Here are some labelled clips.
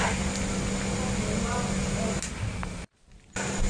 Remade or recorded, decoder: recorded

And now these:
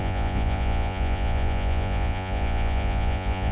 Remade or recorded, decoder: remade, vocoder, Vocos